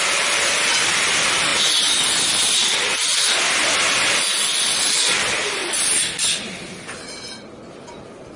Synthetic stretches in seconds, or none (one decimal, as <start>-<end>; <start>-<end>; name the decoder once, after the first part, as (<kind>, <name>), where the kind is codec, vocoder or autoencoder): none